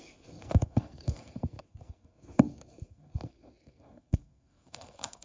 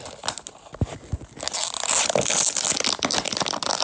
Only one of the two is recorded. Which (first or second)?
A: second